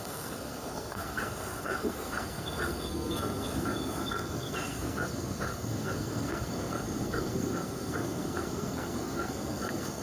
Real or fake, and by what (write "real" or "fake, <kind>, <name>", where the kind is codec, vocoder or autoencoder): fake, codec, SNAC